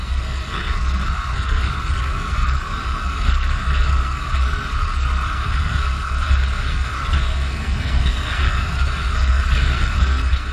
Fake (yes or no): yes